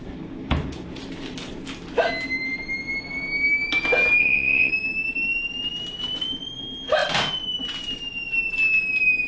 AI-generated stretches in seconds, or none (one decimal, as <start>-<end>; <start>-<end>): 4.2-4.7